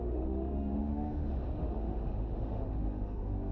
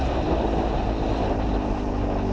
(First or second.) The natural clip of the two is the second